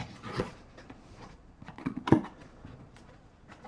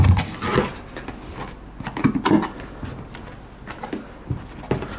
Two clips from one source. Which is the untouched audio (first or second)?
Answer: second